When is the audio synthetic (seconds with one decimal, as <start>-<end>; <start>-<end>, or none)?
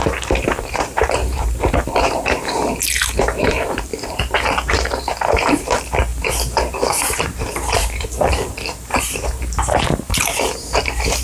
0.0-11.2